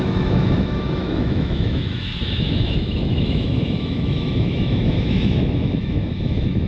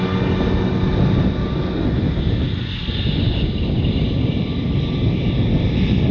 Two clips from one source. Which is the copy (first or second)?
first